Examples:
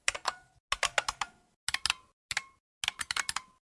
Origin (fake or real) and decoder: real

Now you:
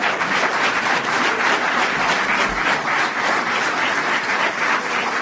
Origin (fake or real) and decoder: real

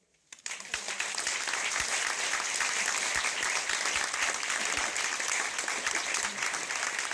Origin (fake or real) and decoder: real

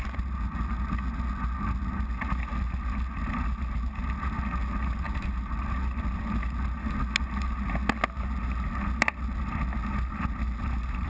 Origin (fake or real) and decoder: real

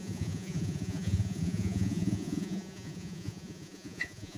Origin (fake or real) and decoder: fake, vocoder, Vocos